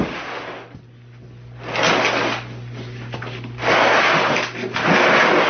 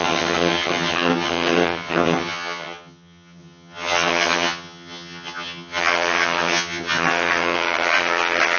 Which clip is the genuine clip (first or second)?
first